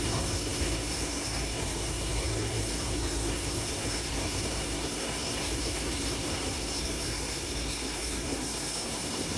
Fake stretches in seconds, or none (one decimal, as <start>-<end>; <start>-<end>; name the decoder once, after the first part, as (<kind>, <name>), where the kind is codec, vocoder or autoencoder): 0.0-9.4 (codec, SNAC)